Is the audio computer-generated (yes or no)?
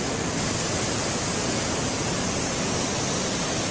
no